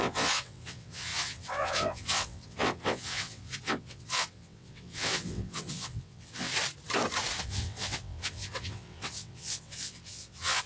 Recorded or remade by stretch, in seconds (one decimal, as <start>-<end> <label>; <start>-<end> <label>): 0.0-6.5 remade; 6.5-7.4 recorded; 7.4-10.7 remade